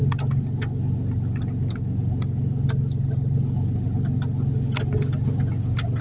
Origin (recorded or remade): recorded